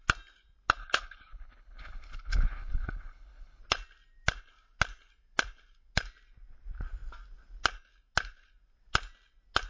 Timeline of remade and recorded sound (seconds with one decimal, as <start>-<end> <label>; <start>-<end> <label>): 0.0-0.8 recorded; 0.8-3.6 remade; 3.6-9.7 recorded